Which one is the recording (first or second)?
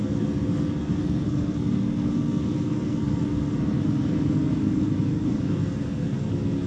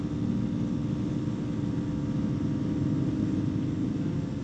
second